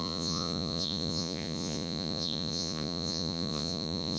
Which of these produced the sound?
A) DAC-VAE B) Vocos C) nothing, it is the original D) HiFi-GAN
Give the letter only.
B